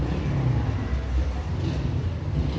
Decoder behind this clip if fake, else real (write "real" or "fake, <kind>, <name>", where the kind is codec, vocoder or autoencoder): real